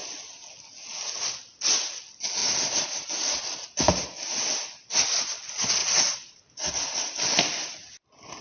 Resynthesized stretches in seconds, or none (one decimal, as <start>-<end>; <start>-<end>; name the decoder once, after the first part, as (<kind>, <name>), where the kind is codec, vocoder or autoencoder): 2.4-3.4 (vocoder, BigVGAN v2); 5.8-6.7